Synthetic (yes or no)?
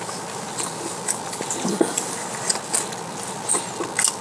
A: no